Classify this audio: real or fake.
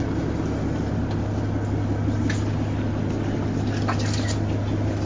real